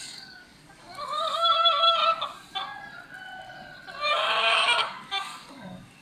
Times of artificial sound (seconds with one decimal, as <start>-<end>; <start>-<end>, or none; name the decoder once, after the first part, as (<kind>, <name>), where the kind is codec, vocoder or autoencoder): 0.0-2.0 (codec, DAC); 4.1-6.0